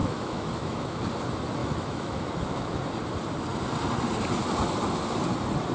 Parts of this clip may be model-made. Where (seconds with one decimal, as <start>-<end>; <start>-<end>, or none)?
0.0-1.0; 1.6-2.8